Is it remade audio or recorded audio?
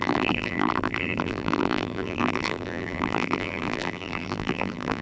remade